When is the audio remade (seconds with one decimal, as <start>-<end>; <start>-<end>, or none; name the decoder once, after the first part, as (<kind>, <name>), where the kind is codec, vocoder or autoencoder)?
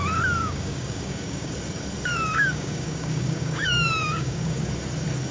0.4-1.5 (codec, DAC); 2.1-4.7